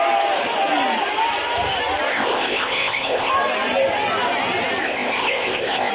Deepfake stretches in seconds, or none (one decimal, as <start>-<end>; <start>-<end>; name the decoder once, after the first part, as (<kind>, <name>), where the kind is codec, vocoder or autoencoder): 2.1-3.3 (codec, ZipCodec); 4.8-5.9